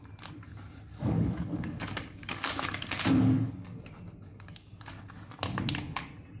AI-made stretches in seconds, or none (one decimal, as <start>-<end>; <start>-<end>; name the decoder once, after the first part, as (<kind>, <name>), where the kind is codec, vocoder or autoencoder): 0.9-3.8 (codec, DAC); 4.3-4.9